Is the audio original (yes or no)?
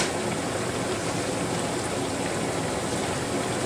yes